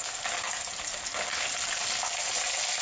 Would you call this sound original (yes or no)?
yes